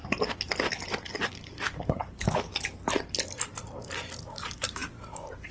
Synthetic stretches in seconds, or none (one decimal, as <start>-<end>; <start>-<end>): 0.7-2.5; 4.1-5.5